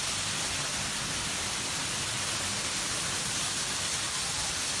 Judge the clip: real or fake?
real